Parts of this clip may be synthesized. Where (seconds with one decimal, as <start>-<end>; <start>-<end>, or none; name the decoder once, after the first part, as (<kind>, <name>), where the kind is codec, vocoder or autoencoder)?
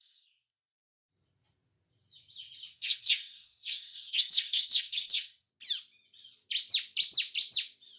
0.0-1.1 (codec, SNAC); 2.7-5.5